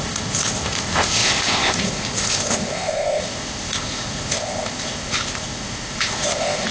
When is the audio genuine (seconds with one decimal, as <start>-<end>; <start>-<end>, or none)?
none